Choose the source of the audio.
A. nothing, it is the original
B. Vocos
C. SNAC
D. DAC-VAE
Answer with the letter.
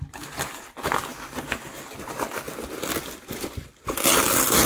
A